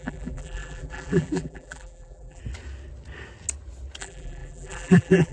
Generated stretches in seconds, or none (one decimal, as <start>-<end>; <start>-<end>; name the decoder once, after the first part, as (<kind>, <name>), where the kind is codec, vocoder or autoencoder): 0.0-2.4 (vocoder, BigVGAN v2); 4.0-5.3